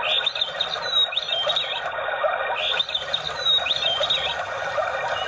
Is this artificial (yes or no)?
no